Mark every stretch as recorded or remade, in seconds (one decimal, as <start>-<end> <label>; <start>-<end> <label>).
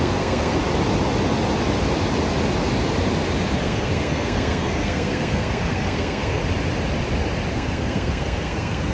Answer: 0.0-0.6 remade; 0.6-3.6 recorded; 3.6-6.4 remade; 6.4-7.5 recorded; 7.5-8.9 remade